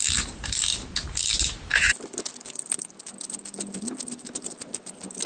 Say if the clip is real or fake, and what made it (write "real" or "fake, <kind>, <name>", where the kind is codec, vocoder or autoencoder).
real